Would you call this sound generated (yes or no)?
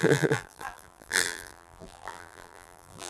yes